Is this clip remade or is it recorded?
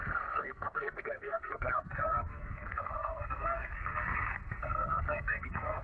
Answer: remade